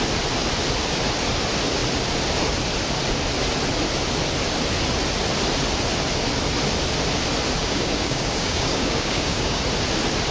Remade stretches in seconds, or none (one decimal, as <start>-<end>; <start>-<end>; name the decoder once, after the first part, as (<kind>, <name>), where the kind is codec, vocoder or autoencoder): 7.6-9.6 (codec, DAC)